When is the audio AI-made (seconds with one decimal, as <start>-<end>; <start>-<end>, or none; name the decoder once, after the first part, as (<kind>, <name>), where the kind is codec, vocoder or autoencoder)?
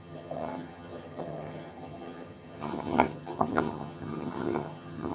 0.0-5.1 (vocoder, HiFi-GAN)